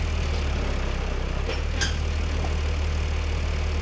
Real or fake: real